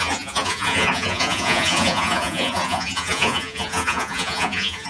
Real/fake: fake